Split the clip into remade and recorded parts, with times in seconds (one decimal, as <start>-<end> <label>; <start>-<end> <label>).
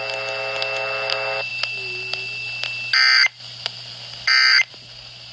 0.0-5.3 recorded